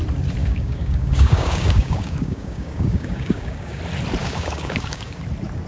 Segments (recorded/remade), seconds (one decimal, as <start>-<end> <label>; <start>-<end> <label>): 0.0-0.4 recorded; 0.4-3.8 remade; 3.8-4.2 recorded; 4.2-5.2 remade; 5.2-5.7 recorded